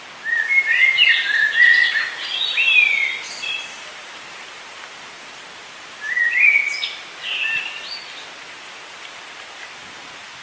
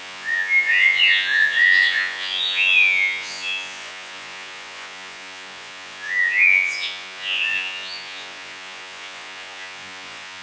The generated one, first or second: second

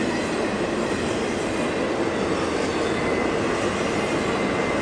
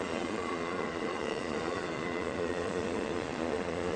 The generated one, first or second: second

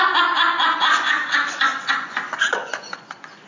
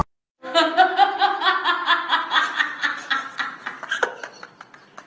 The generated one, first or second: first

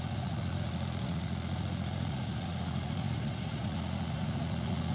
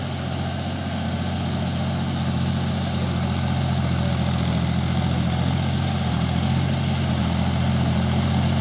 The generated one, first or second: first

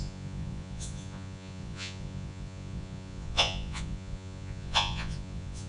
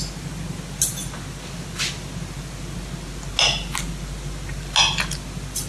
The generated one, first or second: first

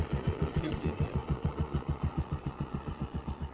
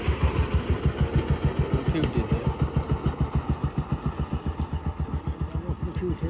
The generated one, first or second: first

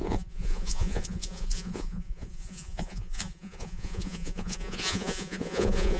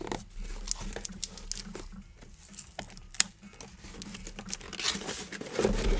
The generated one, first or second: first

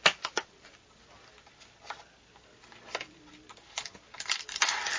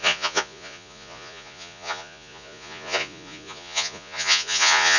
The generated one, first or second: second